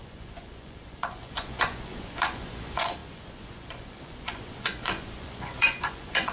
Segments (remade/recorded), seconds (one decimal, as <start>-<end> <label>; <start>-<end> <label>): 0.0-6.3 remade